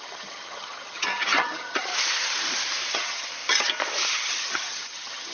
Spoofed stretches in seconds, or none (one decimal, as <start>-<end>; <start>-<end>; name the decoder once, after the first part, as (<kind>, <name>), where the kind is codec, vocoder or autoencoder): 0.0-1.9 (vocoder, HiFi-GAN); 2.9-3.3; 4.1-5.3